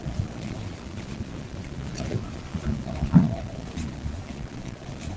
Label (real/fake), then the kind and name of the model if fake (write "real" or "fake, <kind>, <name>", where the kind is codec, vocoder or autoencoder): fake, vocoder, Vocos